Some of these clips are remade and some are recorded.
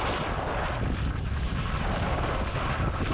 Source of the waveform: recorded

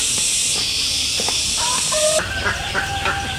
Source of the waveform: recorded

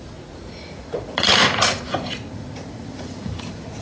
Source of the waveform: remade